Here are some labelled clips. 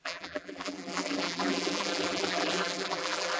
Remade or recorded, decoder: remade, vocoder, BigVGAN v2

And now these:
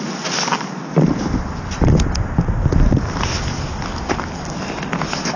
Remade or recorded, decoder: recorded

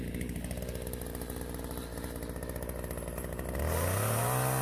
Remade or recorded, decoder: recorded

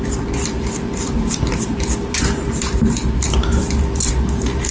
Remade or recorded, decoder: remade, vocoder, BigVGAN v2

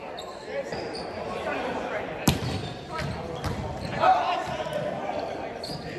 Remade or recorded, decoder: remade, vocoder, BigVGAN v2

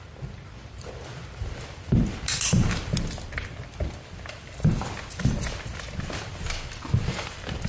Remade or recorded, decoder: remade, vocoder, BigVGAN v2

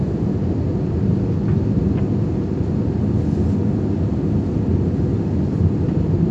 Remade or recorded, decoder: recorded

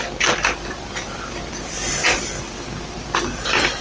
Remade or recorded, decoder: remade, vocoder, BigVGAN v2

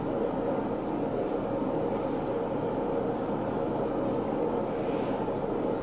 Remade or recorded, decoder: remade, vocoder, BigVGAN v2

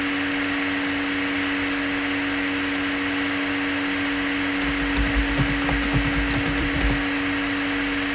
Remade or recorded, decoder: recorded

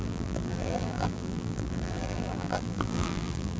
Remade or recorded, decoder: remade, vocoder, BigVGAN v2